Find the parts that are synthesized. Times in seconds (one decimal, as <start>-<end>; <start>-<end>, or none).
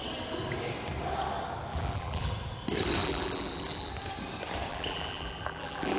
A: 1.7-2.3; 3.0-3.9; 4.7-6.0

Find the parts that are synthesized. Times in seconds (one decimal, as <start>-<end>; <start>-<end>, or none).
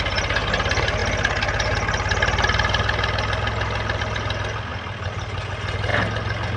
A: none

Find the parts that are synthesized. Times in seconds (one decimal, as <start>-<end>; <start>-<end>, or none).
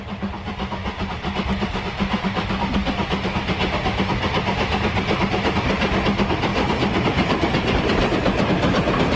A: 6.5-7.8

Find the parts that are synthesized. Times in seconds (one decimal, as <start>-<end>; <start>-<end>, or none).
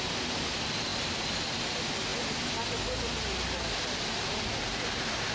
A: 0.9-1.6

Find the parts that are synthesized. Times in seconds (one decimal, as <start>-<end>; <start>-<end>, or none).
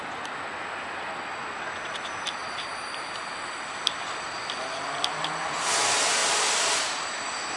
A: none